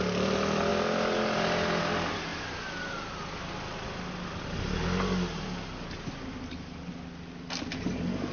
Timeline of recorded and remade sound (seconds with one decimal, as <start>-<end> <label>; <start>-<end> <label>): 0.0-8.3 recorded